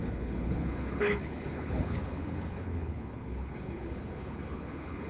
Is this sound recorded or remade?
remade